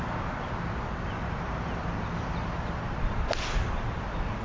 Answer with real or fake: real